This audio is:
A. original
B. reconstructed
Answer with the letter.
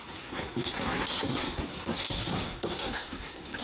B